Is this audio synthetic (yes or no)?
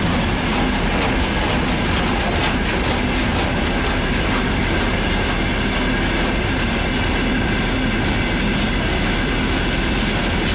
no